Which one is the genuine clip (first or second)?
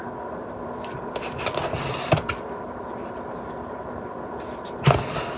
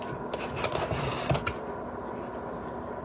second